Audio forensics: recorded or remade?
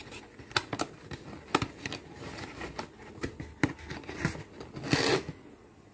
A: recorded